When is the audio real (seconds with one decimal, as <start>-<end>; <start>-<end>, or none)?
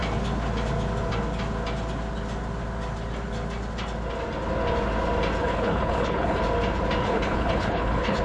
0.0-5.4; 6.4-7.0